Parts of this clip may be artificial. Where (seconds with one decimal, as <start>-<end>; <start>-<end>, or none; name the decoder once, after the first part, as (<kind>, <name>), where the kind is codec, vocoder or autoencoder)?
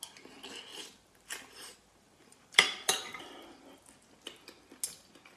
0.7-3.2 (vocoder, BigVGAN v2)